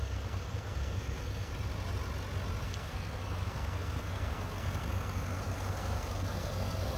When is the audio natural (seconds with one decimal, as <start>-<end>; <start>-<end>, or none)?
1.5-2.6